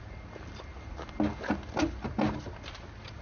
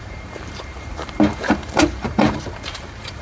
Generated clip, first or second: second